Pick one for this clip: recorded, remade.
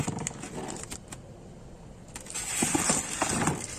recorded